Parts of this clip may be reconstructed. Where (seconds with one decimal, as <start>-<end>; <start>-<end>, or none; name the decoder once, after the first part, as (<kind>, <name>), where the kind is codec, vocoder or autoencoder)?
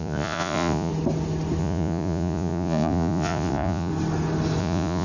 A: 0.0-0.9 (vocoder, Vocos); 1.6-3.9; 4.6-5.0